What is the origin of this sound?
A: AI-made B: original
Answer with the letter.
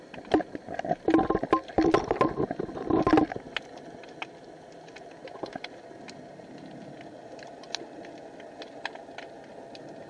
B